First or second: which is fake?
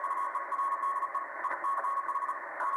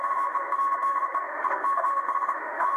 second